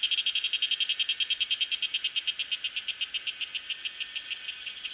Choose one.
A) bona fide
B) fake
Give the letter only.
A